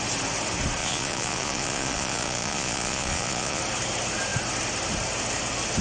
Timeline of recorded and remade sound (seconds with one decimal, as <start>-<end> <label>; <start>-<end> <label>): 0.0-0.8 recorded; 0.8-3.6 remade; 3.6-5.8 recorded